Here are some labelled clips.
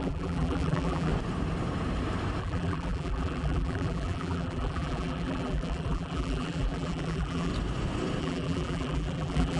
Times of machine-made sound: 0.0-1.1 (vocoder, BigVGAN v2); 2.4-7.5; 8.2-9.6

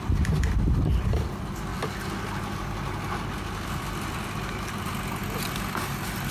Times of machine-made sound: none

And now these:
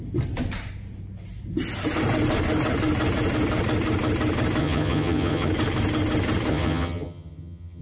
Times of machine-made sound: 4.6-5.5 (vocoder, HiFi-GAN); 6.5-7.8

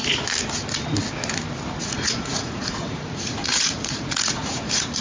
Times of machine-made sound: 1.8-5.0 (vocoder, Vocos)

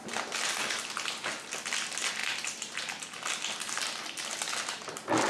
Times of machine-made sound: none

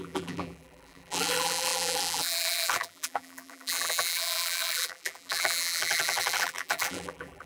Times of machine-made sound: 0.0-7.5 (vocoder, BigVGAN v2)